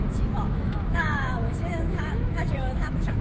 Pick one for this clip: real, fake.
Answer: fake